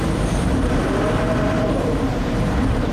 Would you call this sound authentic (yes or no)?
no